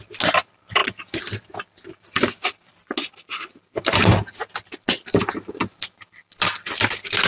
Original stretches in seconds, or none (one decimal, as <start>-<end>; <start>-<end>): 0.0-7.3